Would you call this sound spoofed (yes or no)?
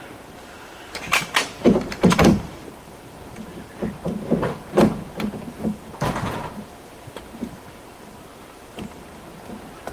yes